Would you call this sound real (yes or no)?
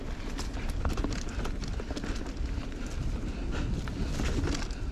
yes